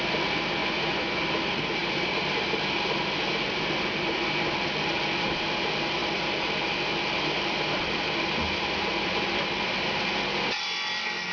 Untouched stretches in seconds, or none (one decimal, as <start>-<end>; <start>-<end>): 0.0-0.6; 1.2-11.3